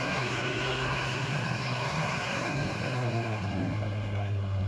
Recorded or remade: remade